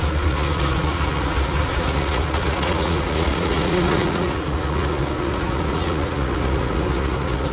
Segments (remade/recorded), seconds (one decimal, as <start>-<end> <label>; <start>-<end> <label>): 0.0-7.5 remade

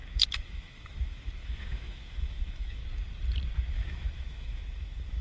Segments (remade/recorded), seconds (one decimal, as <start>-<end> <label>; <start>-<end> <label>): 0.0-2.8 remade; 2.8-3.7 recorded; 3.7-5.2 remade

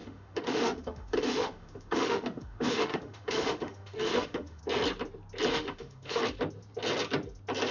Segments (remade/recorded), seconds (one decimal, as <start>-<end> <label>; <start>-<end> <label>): 0.0-4.6 remade; 4.6-5.5 recorded; 5.5-6.2 remade; 6.2-7.7 recorded

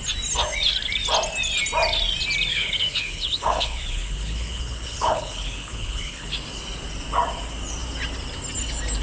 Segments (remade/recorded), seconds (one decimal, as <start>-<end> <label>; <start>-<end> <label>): 0.0-2.5 recorded; 2.5-6.3 remade; 6.3-9.0 recorded

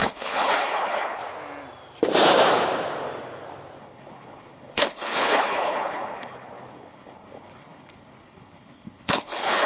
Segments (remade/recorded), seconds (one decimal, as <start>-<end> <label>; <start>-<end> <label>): 0.0-1.2 remade; 1.2-3.8 recorded; 3.8-9.7 remade

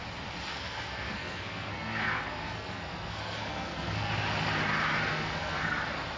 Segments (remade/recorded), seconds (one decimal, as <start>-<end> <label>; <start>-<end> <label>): 0.0-0.5 recorded; 0.5-4.1 remade; 4.1-5.1 recorded; 5.1-5.8 remade; 5.8-6.2 recorded

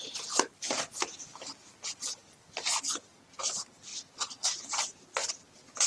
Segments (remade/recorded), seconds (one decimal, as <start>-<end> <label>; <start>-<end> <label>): 0.0-3.9 recorded; 3.9-5.3 remade; 5.3-5.9 recorded

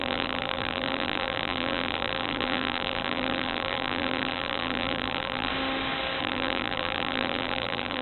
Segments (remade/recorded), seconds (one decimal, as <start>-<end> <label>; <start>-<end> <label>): 0.0-5.5 remade; 5.5-6.2 recorded; 6.2-8.0 remade